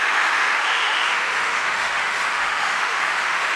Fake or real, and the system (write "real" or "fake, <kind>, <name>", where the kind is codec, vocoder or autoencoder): fake, autoencoder, DAC-VAE